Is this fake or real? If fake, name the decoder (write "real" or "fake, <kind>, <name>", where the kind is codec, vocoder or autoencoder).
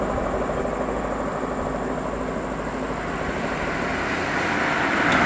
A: real